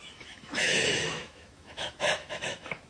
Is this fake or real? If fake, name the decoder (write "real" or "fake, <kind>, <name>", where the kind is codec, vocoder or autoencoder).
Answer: fake, autoencoder, DAC-VAE